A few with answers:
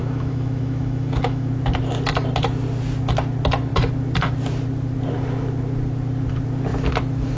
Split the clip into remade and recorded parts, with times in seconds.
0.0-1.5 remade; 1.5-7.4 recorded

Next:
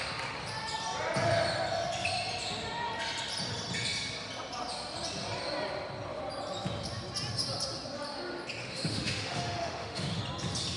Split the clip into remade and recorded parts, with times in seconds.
0.0-8.6 recorded; 8.6-10.2 remade; 10.2-10.8 recorded

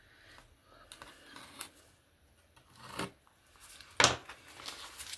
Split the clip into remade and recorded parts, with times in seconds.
0.0-5.2 recorded

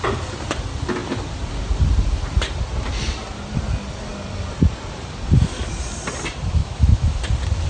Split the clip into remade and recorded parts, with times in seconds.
0.0-6.6 recorded; 6.6-7.2 remade; 7.2-7.7 recorded

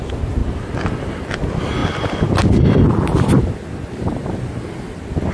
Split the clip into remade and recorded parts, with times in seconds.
0.0-5.3 recorded